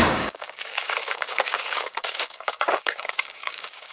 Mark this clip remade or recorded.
remade